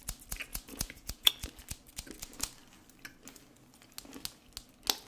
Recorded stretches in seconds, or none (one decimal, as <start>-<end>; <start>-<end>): 0.0-0.5; 1.3-5.1